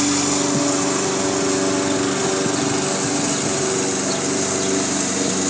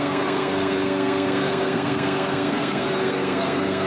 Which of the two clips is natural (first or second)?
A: first